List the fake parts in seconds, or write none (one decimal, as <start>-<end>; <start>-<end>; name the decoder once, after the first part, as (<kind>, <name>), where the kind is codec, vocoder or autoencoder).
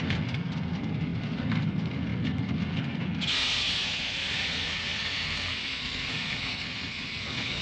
0.0-7.6 (codec, SNAC)